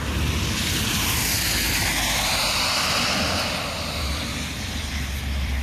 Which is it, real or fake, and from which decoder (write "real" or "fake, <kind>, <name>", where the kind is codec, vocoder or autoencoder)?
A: fake, vocoder, BigVGAN v2